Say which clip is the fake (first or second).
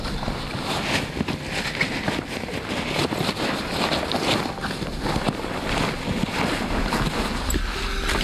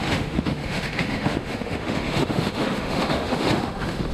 second